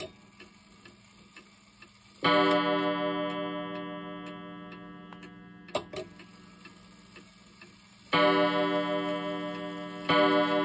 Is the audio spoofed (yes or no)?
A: no